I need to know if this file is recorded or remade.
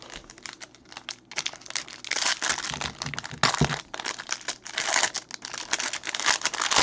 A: recorded